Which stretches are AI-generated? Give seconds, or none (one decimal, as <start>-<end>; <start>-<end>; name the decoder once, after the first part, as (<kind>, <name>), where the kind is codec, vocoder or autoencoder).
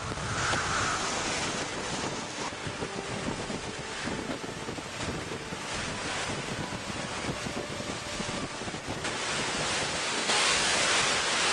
10.1-10.9 (codec, DAC)